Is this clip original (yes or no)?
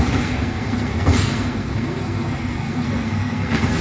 no